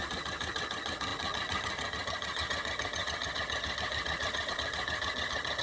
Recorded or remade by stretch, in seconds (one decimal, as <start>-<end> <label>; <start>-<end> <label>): 0.0-5.6 remade